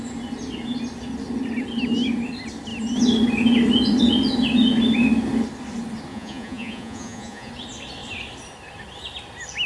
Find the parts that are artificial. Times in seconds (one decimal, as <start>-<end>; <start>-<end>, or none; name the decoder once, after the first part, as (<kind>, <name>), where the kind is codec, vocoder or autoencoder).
6.1-7.5 (vocoder, Vocos)